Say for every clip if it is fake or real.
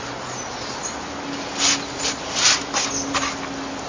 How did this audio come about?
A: real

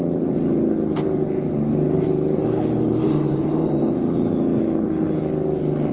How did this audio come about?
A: real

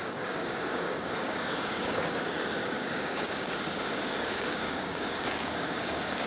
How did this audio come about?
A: fake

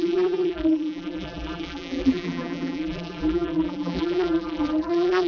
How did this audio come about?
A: fake